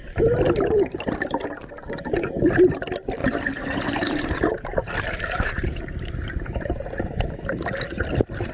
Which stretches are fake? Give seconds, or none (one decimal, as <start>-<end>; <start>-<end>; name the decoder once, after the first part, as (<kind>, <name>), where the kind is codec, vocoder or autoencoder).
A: 3.2-7.4 (vocoder, BigVGAN v2)